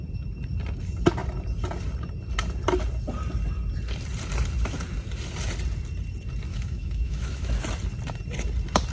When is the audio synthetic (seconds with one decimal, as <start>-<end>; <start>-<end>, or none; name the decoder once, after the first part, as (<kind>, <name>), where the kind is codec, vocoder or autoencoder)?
6.5-7.5 (autoencoder, DAC-VAE)